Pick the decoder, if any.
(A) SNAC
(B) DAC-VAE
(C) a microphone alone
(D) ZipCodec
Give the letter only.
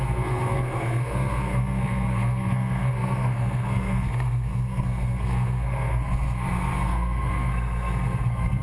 A